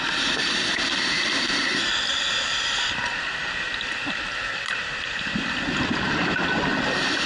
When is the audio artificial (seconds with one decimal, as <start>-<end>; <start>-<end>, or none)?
0.0-6.7